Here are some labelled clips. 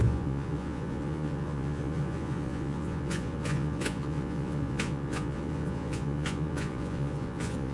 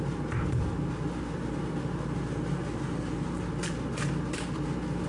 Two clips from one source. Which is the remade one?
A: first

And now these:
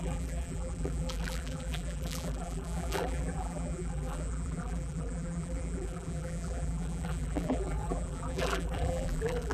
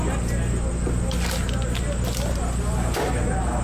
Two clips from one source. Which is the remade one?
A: first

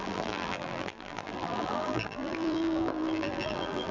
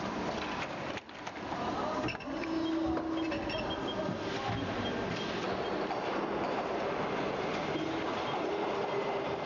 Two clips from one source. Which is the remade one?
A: first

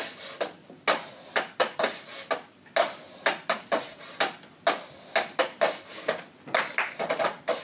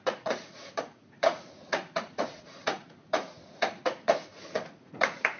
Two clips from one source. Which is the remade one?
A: second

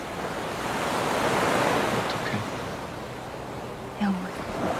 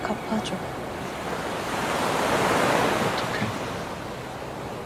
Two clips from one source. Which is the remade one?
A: second